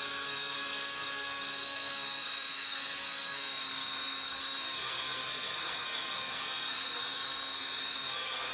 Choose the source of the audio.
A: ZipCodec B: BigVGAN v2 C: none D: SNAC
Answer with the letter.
D